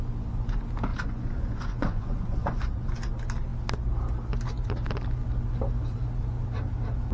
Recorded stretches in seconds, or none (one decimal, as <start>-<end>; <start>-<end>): 0.0-0.9; 2.9-7.1